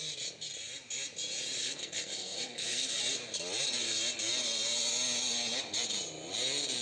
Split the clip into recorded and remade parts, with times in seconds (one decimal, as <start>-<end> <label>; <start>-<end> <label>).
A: 0.0-1.6 recorded; 1.6-3.0 remade; 3.0-6.8 recorded